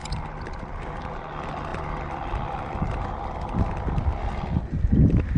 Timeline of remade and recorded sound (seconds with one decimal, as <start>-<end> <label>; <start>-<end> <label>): 0.0-5.4 recorded